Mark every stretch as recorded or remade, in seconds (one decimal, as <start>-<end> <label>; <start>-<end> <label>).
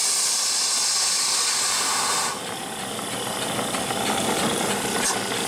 0.0-5.5 recorded